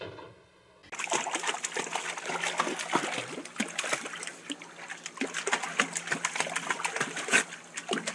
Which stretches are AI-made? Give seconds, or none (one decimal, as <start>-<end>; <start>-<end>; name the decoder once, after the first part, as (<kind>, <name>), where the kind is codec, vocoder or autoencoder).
none